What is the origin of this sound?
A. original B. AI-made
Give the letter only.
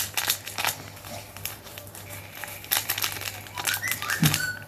A